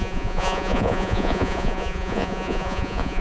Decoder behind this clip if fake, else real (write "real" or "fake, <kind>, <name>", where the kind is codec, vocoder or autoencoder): fake, vocoder, Vocos